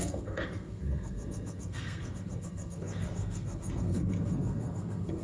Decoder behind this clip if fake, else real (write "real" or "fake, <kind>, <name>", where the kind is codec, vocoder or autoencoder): fake, codec, SNAC